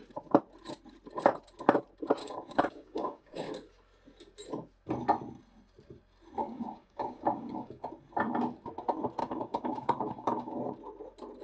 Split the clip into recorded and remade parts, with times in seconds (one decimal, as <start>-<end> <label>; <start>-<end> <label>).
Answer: 0.0-2.2 recorded; 2.2-3.5 remade; 3.5-6.4 recorded; 6.4-7.9 remade; 7.9-9.2 recorded; 9.2-10.6 remade; 10.6-11.4 recorded